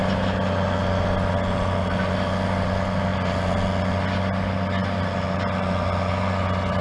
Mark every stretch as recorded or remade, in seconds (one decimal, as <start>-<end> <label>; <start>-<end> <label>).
0.0-6.8 recorded